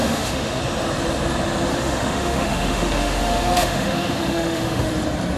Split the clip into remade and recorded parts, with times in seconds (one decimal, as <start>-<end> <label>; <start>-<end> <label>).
0.0-0.6 remade; 0.6-1.7 recorded; 1.7-4.9 remade; 4.9-5.4 recorded